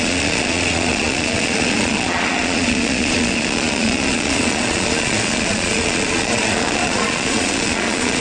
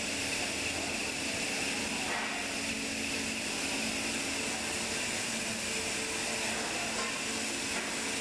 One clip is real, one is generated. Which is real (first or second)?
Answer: second